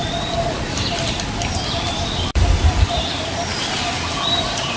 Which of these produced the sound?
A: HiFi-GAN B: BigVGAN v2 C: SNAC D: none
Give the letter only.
B